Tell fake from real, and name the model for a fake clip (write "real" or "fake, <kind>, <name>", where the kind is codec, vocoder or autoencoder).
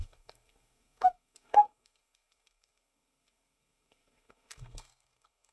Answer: fake, codec, SNAC